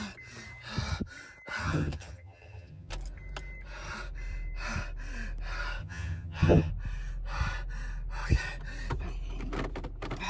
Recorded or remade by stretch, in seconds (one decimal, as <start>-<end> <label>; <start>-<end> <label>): 0.0-1.6 recorded; 1.6-2.9 remade; 2.9-5.8 recorded; 5.8-6.7 remade; 6.7-10.3 recorded